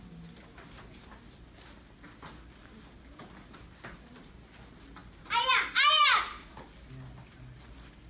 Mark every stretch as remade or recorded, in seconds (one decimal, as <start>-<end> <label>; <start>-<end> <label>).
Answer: 0.0-8.1 recorded